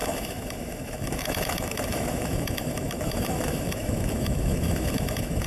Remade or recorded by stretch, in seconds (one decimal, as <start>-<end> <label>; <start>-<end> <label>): 0.0-5.5 remade